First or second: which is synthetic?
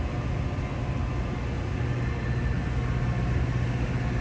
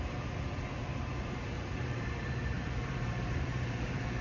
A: second